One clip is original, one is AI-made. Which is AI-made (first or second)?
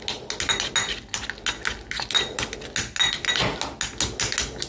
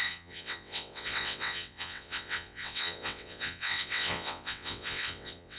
second